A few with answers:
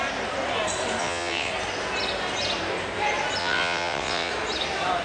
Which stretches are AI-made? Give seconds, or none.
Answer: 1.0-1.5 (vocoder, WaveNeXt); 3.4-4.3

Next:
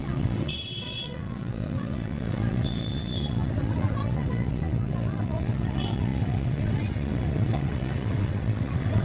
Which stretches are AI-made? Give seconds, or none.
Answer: 0.0-9.0 (vocoder, WaveNeXt)